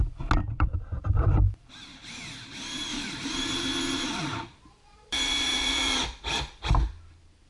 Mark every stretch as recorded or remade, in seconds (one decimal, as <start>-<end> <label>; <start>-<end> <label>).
0.0-0.4 recorded; 0.4-1.7 remade; 1.7-2.9 recorded; 2.9-6.7 remade; 6.7-7.5 recorded